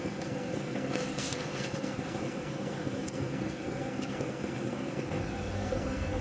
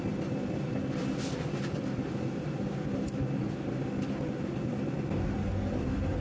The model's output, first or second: first